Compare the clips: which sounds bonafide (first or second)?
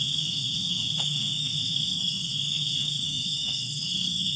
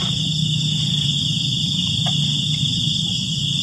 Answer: second